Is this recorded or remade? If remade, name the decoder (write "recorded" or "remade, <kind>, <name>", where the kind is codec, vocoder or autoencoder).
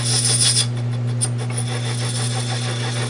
recorded